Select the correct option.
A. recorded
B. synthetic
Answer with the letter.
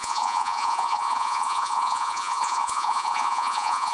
B